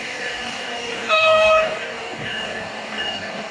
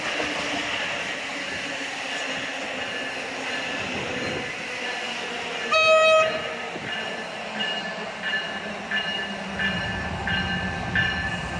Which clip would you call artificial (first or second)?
first